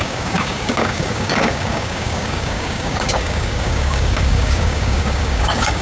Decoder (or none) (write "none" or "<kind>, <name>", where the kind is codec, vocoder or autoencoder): codec, DAC